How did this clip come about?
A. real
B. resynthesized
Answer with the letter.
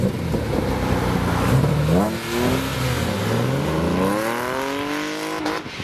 A